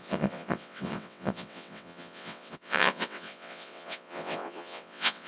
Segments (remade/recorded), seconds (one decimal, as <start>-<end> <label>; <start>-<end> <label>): 0.0-5.3 remade

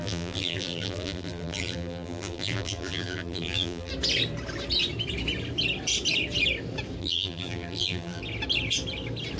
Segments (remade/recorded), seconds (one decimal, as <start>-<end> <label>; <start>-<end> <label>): 0.0-3.9 remade; 3.9-7.0 recorded; 7.0-8.2 remade; 8.2-9.4 recorded

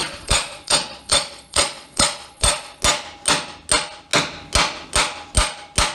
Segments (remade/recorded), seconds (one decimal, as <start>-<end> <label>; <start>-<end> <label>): 0.0-2.8 remade; 2.8-5.9 recorded